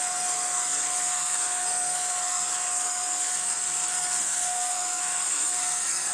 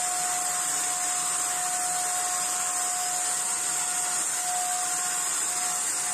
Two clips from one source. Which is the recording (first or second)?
second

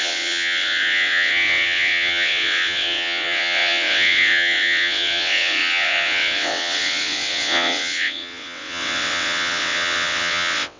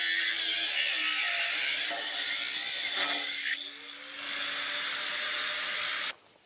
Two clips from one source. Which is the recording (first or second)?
second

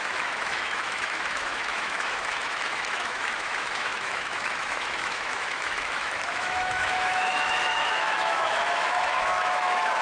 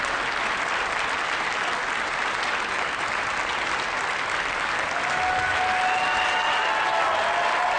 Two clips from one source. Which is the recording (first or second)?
second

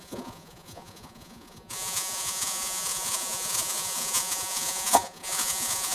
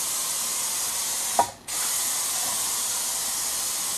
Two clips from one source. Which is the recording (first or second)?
second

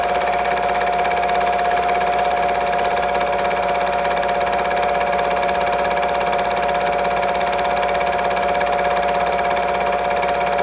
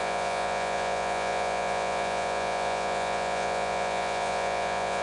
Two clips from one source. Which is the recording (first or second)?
first